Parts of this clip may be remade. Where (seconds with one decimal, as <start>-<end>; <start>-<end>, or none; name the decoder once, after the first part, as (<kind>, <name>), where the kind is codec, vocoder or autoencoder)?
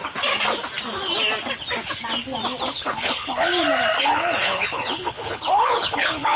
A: 2.7-3.5 (codec, HILCodec); 4.0-6.4